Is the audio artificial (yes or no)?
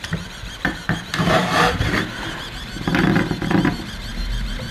yes